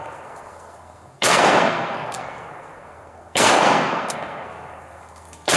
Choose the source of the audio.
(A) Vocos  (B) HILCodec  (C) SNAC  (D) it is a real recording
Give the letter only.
C